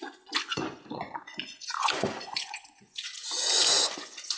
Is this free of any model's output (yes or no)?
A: no